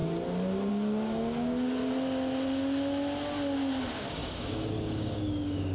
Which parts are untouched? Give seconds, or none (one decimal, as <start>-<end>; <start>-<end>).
0.0-0.7; 1.8-3.8